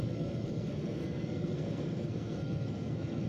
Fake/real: fake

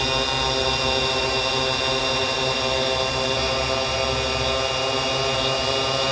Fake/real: real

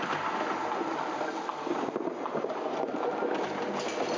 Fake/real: real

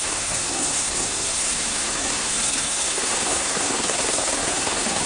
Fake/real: fake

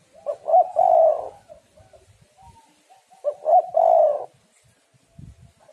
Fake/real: real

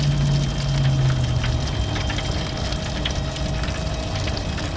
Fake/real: real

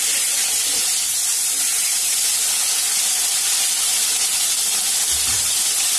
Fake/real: real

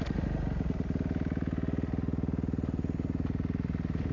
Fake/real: real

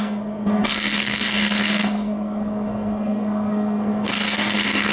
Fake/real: fake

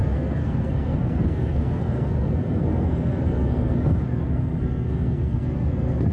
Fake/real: fake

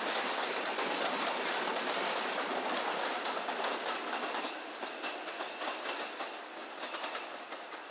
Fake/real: real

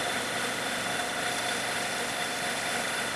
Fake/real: real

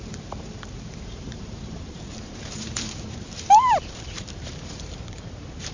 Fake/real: fake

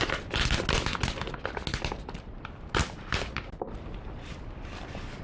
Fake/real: real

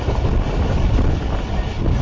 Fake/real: real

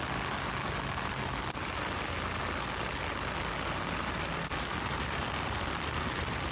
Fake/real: real